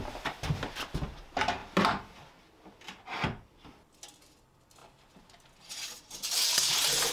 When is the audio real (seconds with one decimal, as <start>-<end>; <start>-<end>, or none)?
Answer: 0.0-7.1